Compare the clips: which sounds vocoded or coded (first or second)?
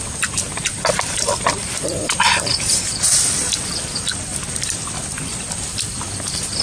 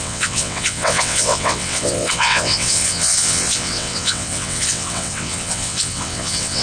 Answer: second